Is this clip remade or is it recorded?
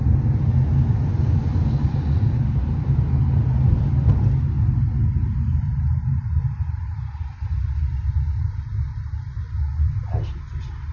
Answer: recorded